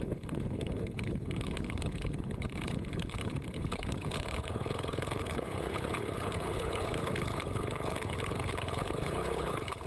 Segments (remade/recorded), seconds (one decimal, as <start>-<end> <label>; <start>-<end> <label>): 0.0-9.9 remade